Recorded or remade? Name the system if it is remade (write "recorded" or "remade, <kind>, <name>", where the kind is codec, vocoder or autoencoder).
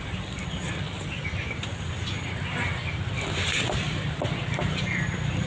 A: recorded